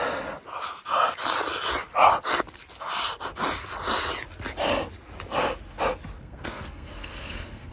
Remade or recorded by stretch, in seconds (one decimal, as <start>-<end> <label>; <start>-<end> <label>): 0.0-6.1 recorded; 6.1-7.7 remade